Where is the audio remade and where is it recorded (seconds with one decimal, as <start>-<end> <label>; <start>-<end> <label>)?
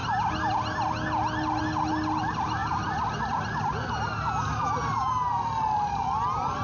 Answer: 0.0-6.6 recorded